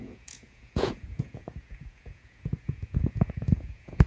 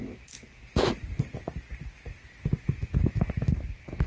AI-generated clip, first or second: first